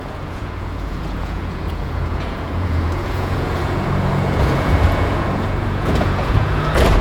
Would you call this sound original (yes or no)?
no